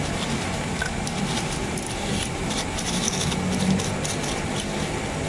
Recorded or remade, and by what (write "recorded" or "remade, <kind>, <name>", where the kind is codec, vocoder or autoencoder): recorded